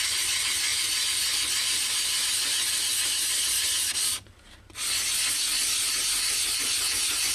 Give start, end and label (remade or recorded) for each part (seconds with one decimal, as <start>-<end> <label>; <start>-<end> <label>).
0.0-7.3 recorded